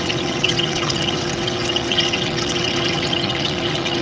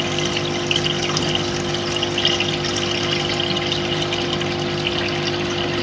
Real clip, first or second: second